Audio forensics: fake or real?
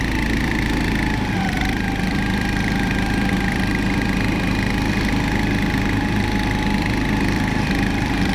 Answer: fake